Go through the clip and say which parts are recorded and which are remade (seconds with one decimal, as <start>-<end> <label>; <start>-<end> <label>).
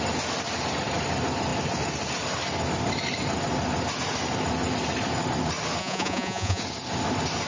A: 0.0-5.8 recorded; 5.8-6.6 remade; 6.6-7.5 recorded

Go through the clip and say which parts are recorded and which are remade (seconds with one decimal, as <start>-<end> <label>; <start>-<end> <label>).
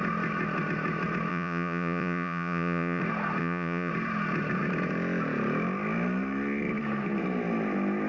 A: 0.0-1.3 recorded; 1.3-3.0 remade; 3.0-3.4 recorded; 3.4-3.9 remade; 3.9-8.1 recorded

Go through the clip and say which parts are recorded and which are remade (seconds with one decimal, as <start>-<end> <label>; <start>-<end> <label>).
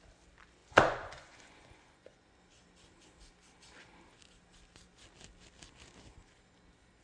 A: 0.0-0.6 recorded; 0.6-2.3 remade; 2.3-7.0 recorded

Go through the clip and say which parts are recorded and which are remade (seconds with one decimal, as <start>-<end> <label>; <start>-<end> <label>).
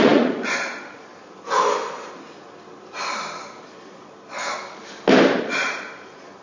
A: 0.0-1.1 remade; 1.1-3.6 recorded; 3.6-4.4 remade; 4.4-5.4 recorded; 5.4-6.4 remade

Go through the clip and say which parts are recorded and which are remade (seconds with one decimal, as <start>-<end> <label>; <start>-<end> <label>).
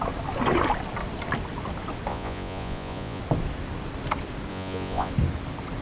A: 0.0-2.1 recorded; 2.1-3.2 remade; 3.2-4.5 recorded; 4.5-5.1 remade; 5.1-5.8 recorded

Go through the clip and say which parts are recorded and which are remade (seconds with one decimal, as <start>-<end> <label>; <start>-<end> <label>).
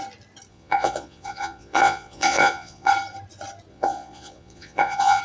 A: 0.0-0.5 recorded; 0.5-2.9 remade; 2.9-3.7 recorded; 3.7-5.2 remade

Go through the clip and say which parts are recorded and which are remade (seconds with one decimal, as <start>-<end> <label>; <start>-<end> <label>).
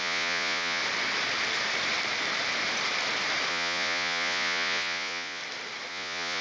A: 0.0-0.8 remade; 0.8-3.5 recorded; 3.5-5.4 remade; 5.4-5.9 recorded; 5.9-6.4 remade